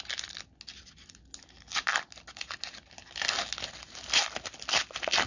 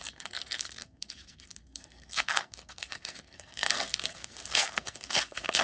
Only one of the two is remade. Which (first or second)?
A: second